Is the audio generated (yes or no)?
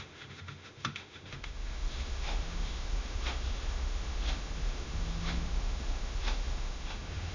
yes